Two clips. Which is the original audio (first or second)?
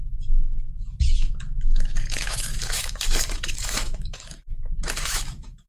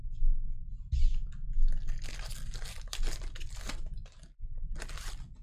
second